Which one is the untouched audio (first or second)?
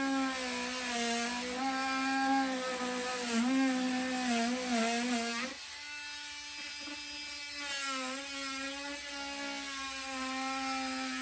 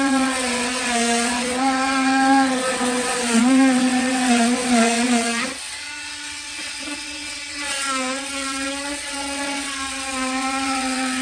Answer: first